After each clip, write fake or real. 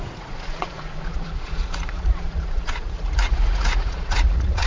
fake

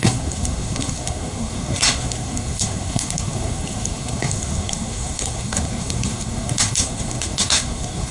fake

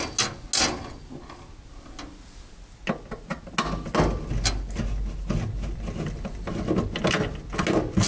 real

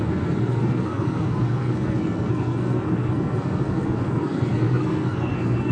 fake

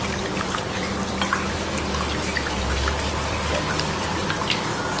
real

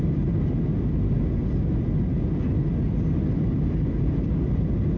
real